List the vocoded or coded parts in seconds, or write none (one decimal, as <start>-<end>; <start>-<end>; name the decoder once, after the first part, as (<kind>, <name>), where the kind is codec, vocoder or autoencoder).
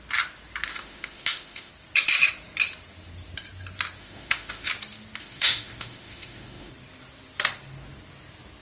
0.7-1.7 (autoencoder, DAC-VAE); 4.0-4.7; 5.2-6.7